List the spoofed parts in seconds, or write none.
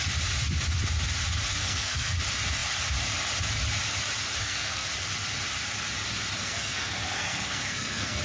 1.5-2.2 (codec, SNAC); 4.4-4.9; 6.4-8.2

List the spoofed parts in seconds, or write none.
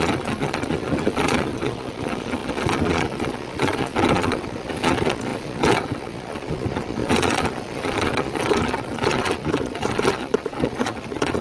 0.0-11.4 (vocoder, Vocos)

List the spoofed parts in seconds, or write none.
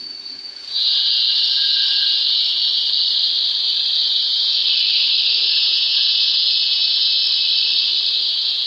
0.0-2.7 (vocoder, Vocos); 4.0-4.6; 5.5-7.2; 8.1-8.7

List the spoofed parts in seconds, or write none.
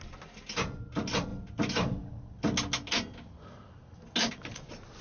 none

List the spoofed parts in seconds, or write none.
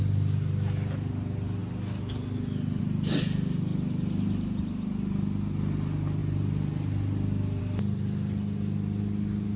none